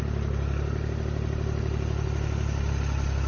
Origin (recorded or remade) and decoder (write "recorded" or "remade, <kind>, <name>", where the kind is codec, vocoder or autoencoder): recorded